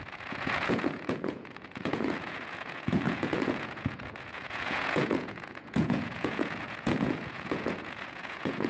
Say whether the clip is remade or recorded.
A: remade